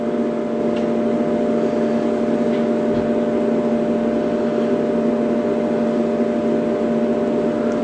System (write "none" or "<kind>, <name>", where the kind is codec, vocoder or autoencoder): none